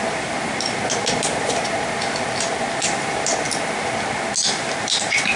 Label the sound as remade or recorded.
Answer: recorded